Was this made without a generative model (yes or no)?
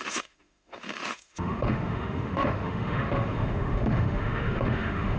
no